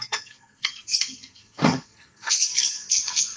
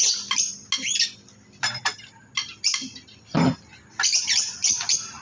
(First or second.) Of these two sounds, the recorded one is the second